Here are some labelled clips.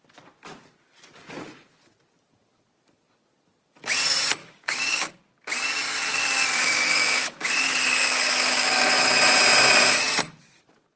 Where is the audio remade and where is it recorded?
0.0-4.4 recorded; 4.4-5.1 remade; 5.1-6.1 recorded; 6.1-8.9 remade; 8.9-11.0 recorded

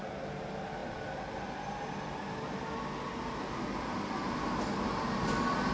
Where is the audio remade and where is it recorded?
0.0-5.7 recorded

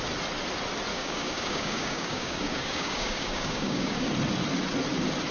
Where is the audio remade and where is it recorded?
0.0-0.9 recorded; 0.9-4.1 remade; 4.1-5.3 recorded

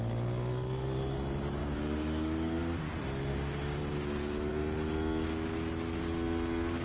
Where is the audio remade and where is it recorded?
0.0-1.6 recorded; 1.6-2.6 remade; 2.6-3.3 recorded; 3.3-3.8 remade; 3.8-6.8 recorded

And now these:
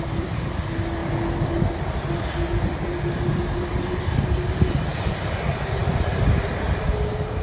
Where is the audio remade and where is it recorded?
0.0-7.4 recorded

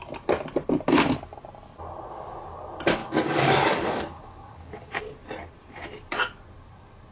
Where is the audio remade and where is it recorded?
0.0-3.0 recorded; 3.0-5.0 remade; 5.0-7.1 recorded

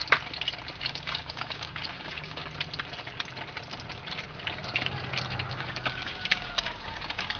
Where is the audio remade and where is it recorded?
0.0-0.8 recorded; 0.8-2.4 remade; 2.4-5.5 recorded; 5.5-7.4 remade